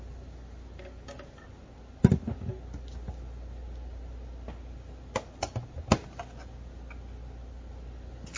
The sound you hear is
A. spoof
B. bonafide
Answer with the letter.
B